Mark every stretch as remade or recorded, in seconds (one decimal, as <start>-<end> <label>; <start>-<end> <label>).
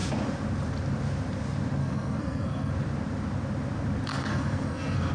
0.0-1.8 recorded; 1.8-2.7 remade; 2.7-4.1 recorded; 4.1-5.1 remade